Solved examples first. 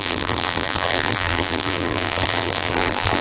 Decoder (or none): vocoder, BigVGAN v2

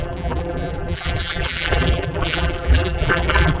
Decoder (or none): vocoder, BigVGAN v2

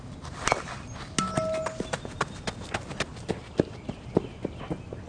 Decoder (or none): none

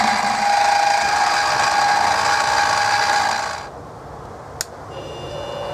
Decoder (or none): none